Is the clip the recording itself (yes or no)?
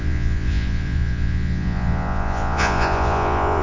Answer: no